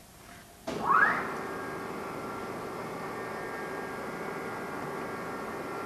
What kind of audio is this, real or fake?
real